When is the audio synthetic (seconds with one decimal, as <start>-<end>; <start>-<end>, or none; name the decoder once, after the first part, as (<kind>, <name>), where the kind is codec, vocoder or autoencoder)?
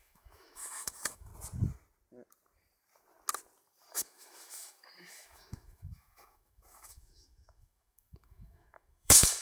0.0-1.3 (autoencoder, DAC-VAE); 3.9-9.4